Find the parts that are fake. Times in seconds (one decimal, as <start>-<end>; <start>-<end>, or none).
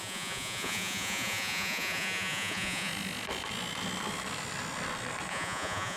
0.0-2.9; 5.3-6.0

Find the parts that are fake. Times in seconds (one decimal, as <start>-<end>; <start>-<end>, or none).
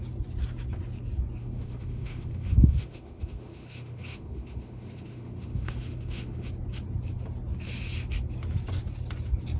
1.4-6.5